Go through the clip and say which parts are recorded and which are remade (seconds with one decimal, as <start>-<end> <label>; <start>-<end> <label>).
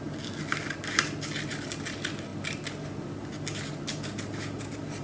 0.0-5.0 recorded